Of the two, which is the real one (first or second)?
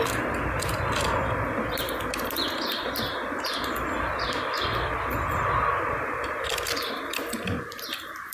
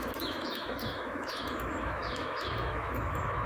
first